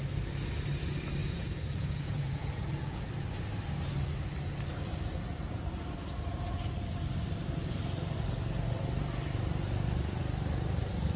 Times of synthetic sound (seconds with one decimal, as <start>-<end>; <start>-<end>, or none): 1.2-3.1